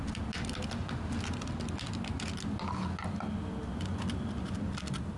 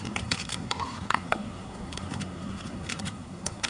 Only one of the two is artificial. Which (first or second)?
second